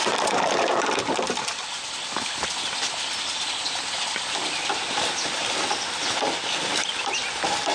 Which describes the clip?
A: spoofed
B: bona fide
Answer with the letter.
B